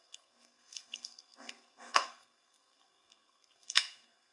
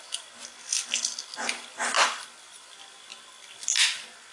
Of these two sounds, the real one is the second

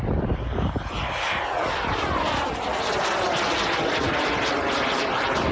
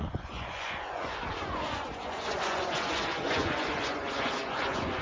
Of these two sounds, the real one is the first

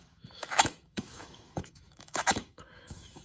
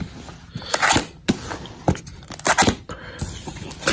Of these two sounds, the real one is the second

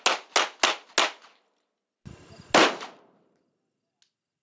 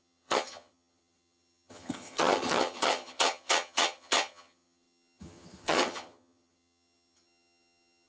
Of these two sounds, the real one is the first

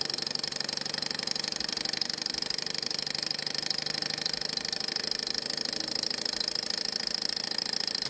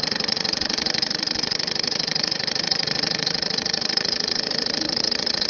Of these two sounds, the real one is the first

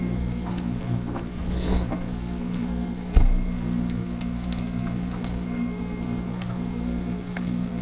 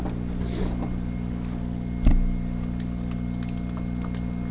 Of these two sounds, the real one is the second